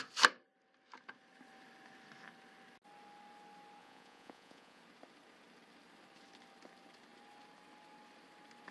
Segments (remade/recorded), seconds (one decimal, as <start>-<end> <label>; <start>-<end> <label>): 0.0-3.8 recorded; 3.8-4.8 remade; 4.8-8.7 recorded